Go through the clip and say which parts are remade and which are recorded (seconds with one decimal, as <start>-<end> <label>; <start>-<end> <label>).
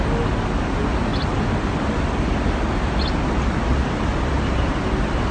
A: 0.0-5.3 recorded